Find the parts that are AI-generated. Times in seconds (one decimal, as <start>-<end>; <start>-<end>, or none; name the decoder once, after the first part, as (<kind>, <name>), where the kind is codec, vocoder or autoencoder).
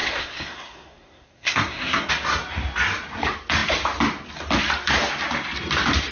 0.0-2.1 (codec, SNAC)